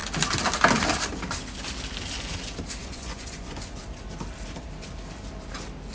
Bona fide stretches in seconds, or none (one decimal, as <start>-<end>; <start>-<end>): 0.0-2.8; 3.8-5.9